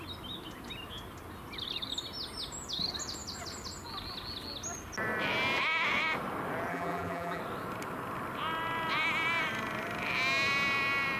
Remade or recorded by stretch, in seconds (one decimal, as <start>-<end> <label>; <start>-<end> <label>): 0.0-6.7 recorded; 6.7-7.4 remade; 7.4-11.2 recorded